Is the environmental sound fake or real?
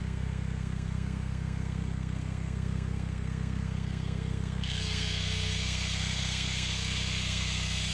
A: fake